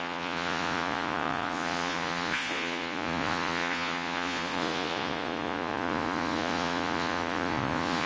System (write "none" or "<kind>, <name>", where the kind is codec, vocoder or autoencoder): vocoder, Vocos